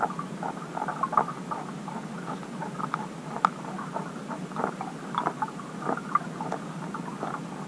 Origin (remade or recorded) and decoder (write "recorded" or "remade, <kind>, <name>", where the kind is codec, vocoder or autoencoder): recorded